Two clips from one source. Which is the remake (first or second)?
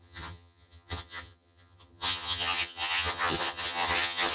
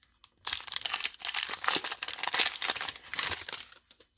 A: first